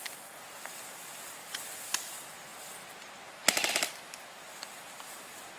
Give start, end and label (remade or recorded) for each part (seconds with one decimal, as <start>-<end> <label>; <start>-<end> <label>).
0.0-2.5 remade; 2.5-3.7 recorded; 3.7-5.6 remade